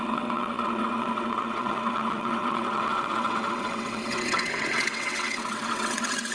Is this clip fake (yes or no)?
yes